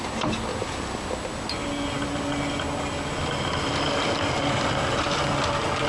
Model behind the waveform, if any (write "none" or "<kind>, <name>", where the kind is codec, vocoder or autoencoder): none